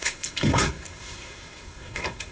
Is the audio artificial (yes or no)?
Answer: yes